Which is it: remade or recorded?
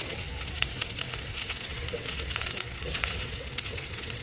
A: remade